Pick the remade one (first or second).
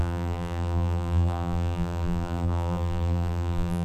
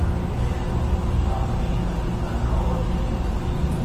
first